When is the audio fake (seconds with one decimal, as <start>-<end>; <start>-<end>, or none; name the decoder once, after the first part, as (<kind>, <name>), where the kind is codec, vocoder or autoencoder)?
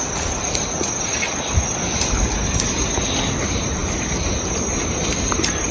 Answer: none